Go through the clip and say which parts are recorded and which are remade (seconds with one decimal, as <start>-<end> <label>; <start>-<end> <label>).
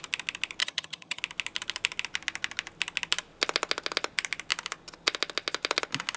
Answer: 0.0-0.6 recorded; 0.6-1.2 remade; 1.2-6.2 recorded